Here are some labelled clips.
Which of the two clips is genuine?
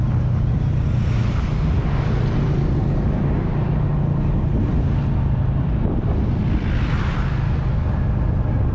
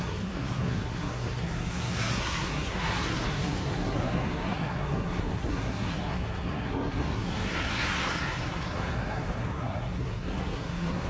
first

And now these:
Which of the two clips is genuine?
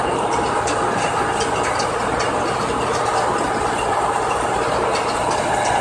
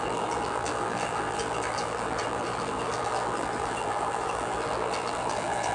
first